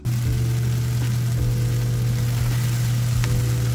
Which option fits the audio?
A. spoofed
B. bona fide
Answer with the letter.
B